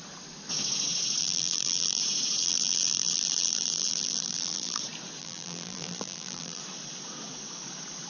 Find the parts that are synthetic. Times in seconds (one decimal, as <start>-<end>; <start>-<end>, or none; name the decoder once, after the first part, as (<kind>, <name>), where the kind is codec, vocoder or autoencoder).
1.2-2.0 (vocoder, BigVGAN v2); 2.4-4.8; 5.2-6.6